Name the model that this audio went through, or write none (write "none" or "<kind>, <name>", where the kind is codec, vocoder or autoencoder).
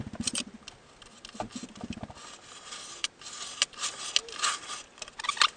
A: none